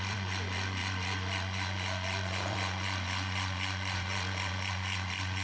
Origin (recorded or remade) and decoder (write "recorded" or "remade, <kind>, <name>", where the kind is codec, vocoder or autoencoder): remade, vocoder, Vocos